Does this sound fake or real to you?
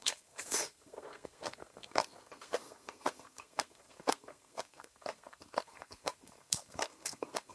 fake